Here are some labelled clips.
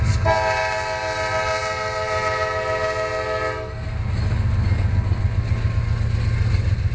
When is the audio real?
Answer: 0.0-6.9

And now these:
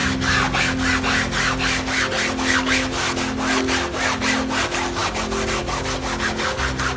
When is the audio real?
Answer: 0.0-7.0

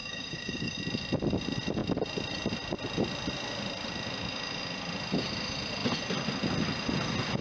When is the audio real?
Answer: 0.8-7.4